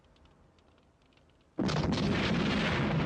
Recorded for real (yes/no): yes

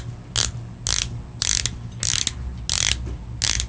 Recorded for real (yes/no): yes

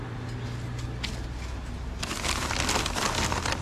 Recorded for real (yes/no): yes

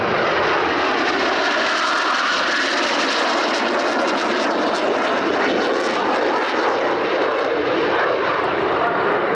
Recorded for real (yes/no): yes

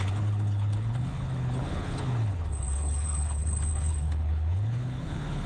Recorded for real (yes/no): no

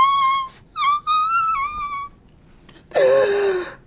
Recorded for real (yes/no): yes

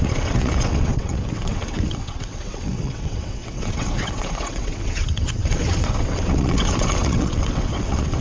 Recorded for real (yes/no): no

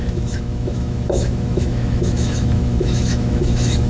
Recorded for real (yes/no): no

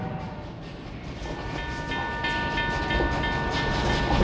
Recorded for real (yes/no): yes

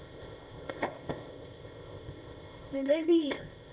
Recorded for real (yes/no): no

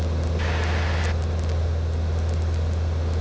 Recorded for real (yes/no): yes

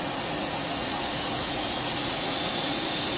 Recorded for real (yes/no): no